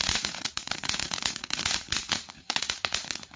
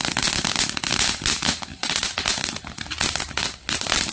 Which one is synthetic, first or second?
first